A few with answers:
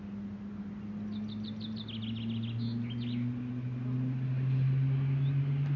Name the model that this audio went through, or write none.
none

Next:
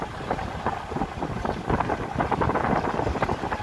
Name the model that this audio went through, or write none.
none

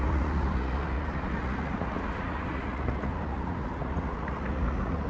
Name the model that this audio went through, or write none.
vocoder, Vocos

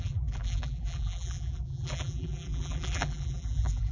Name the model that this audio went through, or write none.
vocoder, BigVGAN v2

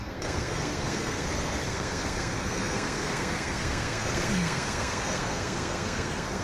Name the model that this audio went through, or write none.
codec, SNAC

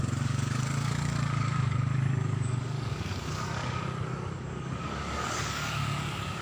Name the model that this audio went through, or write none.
codec, DAC